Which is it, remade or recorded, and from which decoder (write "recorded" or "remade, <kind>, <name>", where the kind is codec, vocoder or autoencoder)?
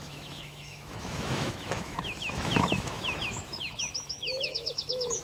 remade, autoencoder, DAC-VAE